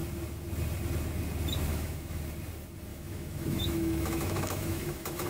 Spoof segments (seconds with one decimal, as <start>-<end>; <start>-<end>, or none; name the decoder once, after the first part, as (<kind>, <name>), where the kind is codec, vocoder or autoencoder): 1.7-2.2 (autoencoder, DAC-VAE); 2.9-5.3